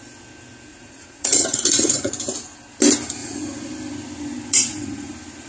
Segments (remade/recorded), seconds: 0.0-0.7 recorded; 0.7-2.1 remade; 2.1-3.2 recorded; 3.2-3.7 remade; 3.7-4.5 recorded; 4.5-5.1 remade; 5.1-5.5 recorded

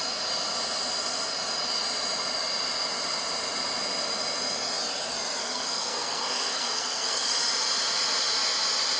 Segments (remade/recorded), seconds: 0.0-5.4 recorded; 5.4-7.3 remade; 7.3-9.0 recorded

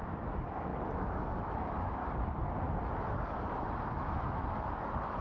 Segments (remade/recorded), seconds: 0.0-2.0 remade; 2.0-3.9 recorded; 3.9-5.2 remade

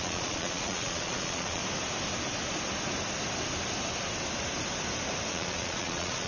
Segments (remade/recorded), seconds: 0.0-1.6 remade; 1.6-5.3 recorded; 5.3-6.3 remade

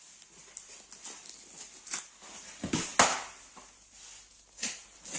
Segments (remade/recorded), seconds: 0.0-5.2 recorded